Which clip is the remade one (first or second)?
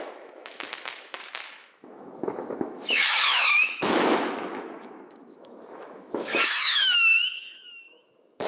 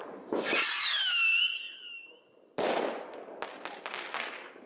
first